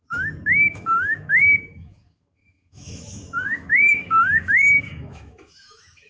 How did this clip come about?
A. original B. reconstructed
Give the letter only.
B